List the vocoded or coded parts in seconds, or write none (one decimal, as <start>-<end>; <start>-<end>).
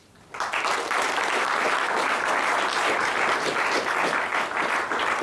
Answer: none